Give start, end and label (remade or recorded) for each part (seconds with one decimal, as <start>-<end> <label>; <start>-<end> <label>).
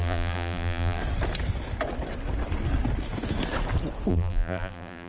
0.0-1.0 remade; 1.0-4.1 recorded; 4.1-5.1 remade